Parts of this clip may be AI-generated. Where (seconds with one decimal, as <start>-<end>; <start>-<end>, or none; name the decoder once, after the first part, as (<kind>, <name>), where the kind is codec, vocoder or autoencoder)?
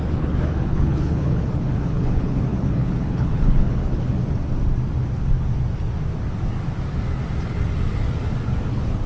0.0-4.2 (codec, HILCodec); 8.7-9.1